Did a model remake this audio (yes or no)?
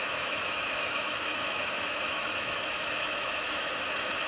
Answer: yes